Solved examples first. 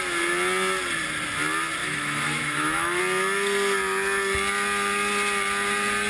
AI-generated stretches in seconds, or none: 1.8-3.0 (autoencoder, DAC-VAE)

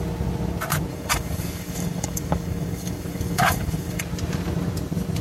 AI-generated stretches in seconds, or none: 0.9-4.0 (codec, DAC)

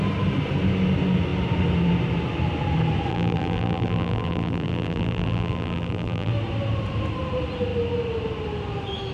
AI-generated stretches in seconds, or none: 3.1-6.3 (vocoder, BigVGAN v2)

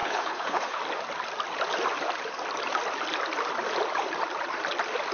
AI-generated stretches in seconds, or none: 0.0-0.8 (codec, HILCodec)

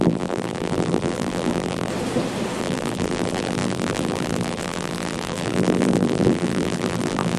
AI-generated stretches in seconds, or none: 0.0-1.9 (vocoder, BigVGAN v2); 2.6-7.4

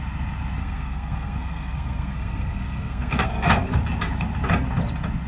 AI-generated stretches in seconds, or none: 0.6-3.8 (codec, SNAC)

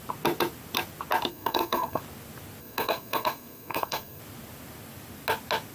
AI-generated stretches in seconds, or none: 1.3-2.0 (codec, SNAC); 2.6-4.2

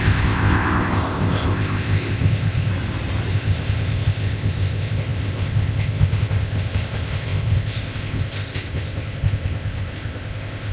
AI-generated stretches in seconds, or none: 0.0-2.7 (codec, ZipCodec); 3.3-10.7